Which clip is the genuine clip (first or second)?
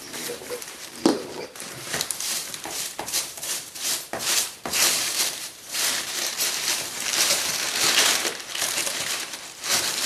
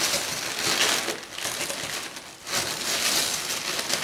second